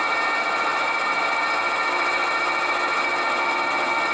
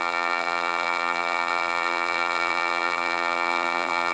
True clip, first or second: first